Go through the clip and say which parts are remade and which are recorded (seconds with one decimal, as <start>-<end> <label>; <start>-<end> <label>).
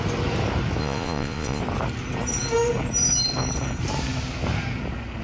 0.0-0.8 recorded; 0.8-1.6 remade; 1.6-5.2 recorded